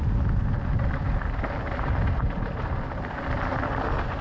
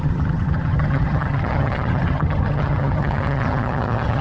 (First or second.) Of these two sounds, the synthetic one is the second